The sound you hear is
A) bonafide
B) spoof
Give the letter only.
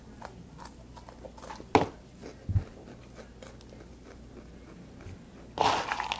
A